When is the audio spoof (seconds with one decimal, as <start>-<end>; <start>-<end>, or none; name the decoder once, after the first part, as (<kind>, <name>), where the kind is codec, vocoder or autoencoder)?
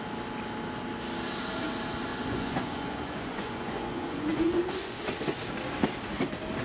2.1-5.0 (vocoder, Vocos)